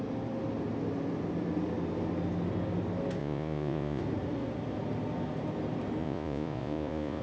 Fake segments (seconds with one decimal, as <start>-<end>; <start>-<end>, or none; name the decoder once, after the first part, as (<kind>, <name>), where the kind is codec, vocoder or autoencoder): 3.2-4.0 (vocoder, Vocos); 6.0-7.2